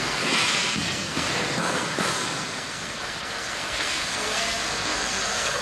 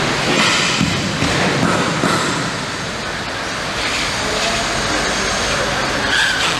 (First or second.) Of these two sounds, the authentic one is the second